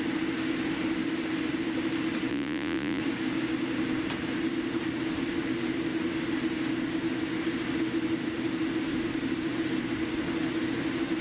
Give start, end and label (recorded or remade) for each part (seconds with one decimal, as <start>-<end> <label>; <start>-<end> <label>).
0.0-2.3 recorded; 2.3-3.0 remade; 3.0-11.2 recorded